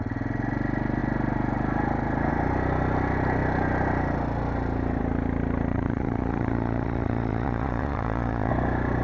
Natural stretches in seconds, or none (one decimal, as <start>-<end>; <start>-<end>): 0.0-5.7; 8.5-9.0